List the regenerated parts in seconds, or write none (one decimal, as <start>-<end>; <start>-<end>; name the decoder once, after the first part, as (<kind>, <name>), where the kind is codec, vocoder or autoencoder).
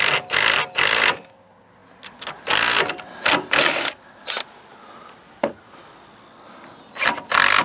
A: none